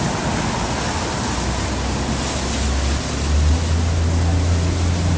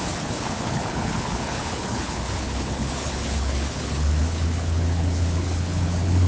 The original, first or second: first